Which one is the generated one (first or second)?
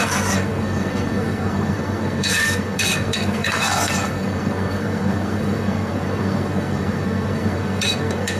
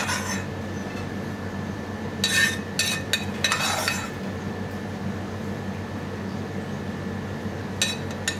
first